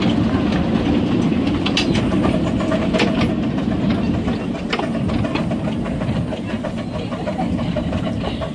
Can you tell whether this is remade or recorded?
recorded